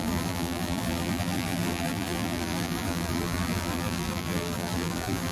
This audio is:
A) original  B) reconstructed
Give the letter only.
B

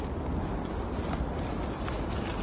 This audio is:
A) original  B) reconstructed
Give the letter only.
A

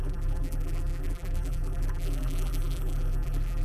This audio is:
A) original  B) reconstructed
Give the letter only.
B